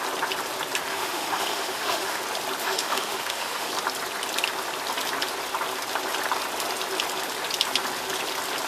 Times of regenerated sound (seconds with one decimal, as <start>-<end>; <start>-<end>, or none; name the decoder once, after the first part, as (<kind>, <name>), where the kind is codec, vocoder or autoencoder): 0.9-2.2 (autoencoder, DAC-VAE); 2.6-3.7